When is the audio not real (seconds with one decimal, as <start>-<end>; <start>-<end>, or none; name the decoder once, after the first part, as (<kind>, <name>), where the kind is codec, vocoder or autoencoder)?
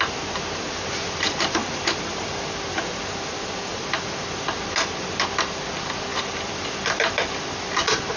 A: 1.6-4.6 (vocoder, BigVGAN v2); 6.1-7.2